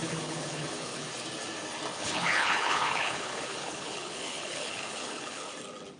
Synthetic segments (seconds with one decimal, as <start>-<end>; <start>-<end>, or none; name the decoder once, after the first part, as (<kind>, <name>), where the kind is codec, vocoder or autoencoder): 0.0-1.1 (codec, HILCodec); 1.9-5.5